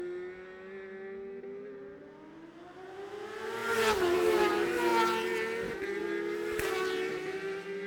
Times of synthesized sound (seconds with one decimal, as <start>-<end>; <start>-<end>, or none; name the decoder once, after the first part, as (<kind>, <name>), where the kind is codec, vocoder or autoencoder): none